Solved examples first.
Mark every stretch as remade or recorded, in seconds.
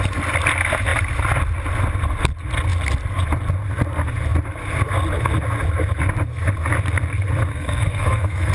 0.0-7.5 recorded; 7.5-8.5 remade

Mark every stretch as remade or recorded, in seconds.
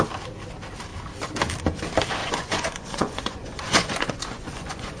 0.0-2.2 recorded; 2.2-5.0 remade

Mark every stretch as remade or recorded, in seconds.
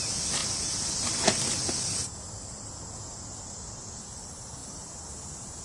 0.0-5.6 recorded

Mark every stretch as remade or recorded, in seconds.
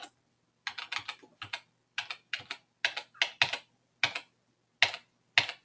0.0-5.6 recorded